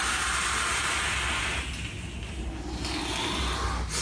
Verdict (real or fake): real